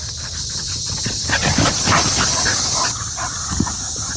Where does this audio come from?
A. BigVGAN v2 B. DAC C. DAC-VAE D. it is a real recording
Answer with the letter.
D